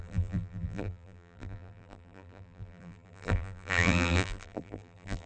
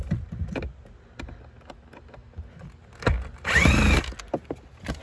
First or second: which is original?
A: second